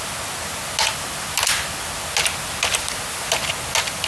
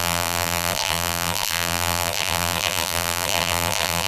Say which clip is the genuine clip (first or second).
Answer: first